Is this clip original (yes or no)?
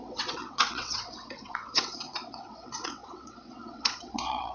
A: no